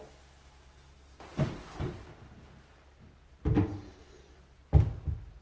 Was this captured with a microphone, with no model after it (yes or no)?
yes